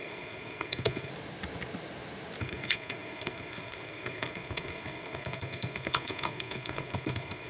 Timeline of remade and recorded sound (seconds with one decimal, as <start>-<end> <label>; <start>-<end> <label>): 0.0-1.1 remade; 1.1-2.4 recorded; 2.4-7.5 remade